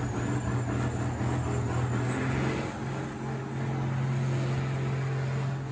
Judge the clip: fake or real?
real